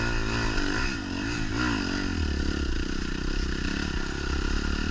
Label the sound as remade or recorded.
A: recorded